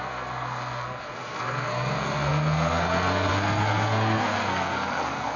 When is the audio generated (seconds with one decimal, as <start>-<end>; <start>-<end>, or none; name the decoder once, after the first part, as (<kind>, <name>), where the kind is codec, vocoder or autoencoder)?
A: 0.0-5.4 (codec, SNAC)